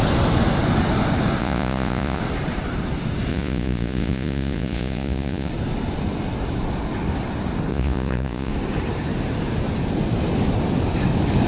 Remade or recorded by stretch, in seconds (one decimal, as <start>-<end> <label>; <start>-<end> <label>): 0.0-1.4 recorded; 1.4-2.2 remade; 2.2-3.3 recorded; 3.3-5.5 remade; 5.5-7.7 recorded; 7.7-8.5 remade; 8.5-11.5 recorded